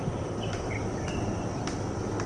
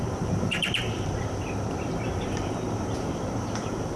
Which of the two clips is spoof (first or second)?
second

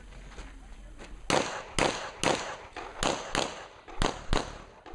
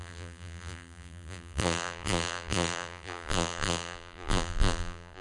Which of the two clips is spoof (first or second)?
second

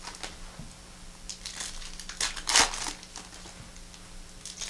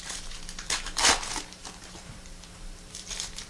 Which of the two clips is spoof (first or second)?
second